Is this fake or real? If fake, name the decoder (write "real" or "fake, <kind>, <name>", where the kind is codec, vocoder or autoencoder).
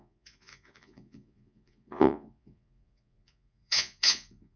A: fake, vocoder, Vocos